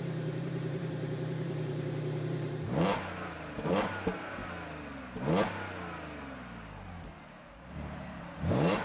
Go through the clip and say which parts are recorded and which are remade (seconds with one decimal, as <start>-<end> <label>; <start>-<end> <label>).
0.0-4.4 remade; 4.4-7.7 recorded; 7.7-8.8 remade